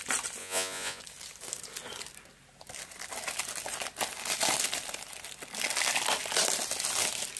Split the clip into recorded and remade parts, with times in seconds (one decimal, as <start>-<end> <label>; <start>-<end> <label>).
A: 0.0-0.4 recorded; 0.4-1.0 remade; 1.0-7.4 recorded